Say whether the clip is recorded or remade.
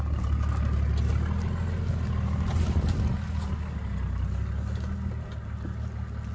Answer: recorded